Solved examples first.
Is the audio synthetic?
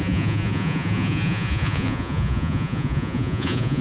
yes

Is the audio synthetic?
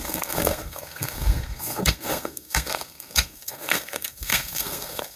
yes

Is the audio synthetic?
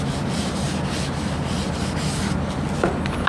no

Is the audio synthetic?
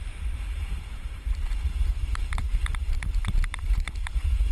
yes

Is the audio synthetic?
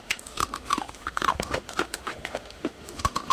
yes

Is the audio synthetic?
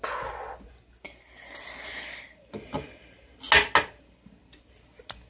no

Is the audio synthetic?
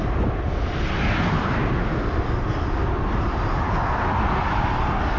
no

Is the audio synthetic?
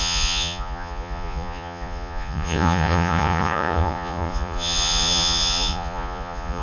yes